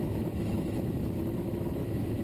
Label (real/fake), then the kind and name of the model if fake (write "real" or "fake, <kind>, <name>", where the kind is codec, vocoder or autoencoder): fake, autoencoder, DAC-VAE